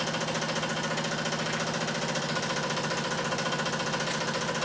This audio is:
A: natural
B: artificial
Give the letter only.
A